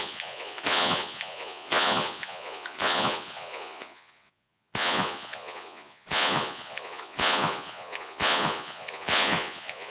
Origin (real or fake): fake